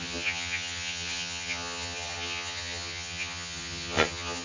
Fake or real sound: fake